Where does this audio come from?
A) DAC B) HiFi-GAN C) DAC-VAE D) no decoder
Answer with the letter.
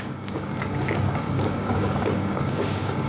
A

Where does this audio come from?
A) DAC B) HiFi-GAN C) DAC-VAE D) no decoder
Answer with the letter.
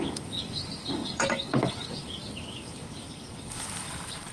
A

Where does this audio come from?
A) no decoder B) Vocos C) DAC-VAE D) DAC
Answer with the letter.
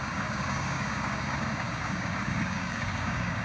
D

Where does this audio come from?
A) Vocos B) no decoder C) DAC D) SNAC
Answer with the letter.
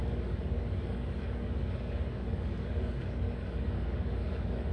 C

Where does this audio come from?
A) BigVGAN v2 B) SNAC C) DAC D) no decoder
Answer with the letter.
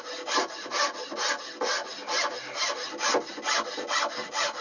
D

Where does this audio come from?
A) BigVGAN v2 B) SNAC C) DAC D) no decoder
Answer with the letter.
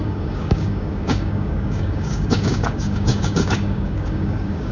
C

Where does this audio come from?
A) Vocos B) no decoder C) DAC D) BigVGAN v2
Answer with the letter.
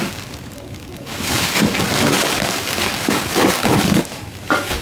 C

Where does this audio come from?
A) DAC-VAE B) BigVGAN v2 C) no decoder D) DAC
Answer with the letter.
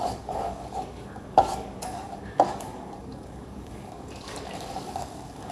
D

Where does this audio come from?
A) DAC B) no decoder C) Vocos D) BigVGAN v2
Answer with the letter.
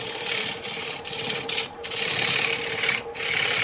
B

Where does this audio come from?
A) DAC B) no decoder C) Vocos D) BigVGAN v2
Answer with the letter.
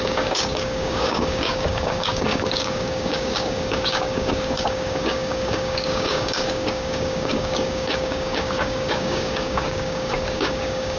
A